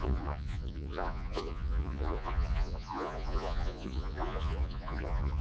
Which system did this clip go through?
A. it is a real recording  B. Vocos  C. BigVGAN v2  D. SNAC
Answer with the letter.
B